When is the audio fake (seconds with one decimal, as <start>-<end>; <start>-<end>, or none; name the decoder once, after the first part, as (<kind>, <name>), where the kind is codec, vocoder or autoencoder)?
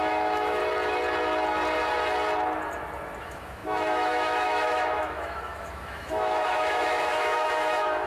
0.0-0.6 (autoencoder, DAC-VAE); 3.2-8.1